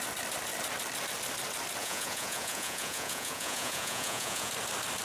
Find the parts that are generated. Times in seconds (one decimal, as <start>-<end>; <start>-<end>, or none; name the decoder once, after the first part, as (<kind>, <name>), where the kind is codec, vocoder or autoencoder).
1.8-4.5 (vocoder, Vocos)